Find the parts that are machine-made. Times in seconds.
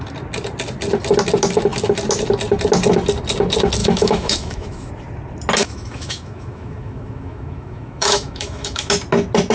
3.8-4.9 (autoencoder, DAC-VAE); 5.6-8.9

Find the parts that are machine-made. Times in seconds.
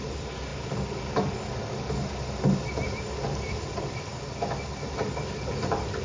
none